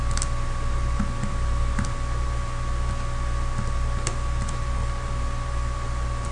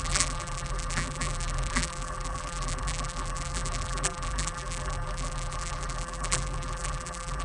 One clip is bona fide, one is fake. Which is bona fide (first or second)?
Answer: first